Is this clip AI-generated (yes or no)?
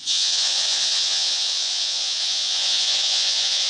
yes